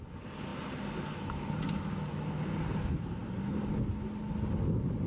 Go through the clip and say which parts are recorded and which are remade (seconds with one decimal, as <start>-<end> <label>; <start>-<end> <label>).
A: 0.0-5.1 recorded